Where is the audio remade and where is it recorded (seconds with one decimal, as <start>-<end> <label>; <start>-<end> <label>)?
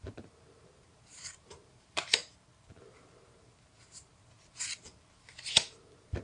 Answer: 0.0-2.2 remade; 2.2-2.8 recorded; 2.8-6.2 remade